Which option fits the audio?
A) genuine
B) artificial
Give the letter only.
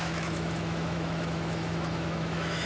B